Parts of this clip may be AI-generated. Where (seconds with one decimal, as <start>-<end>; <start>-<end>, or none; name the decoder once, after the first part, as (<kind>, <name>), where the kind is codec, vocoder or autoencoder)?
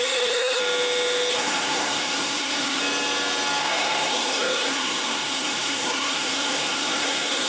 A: 0.0-0.6 (codec, SNAC); 1.3-2.8; 3.6-7.5